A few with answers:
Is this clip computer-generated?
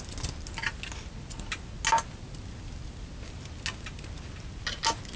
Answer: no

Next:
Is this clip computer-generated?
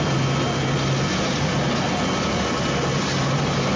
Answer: no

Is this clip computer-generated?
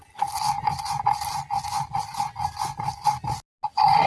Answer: no